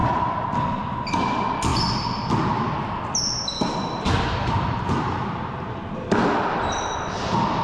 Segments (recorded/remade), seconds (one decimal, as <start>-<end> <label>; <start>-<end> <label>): 0.0-4.4 recorded; 4.4-5.8 remade; 5.8-7.6 recorded